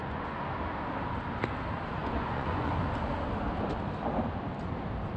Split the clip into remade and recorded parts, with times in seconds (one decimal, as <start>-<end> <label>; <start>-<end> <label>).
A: 0.0-0.6 remade; 0.6-2.0 recorded; 2.0-2.7 remade; 2.7-5.2 recorded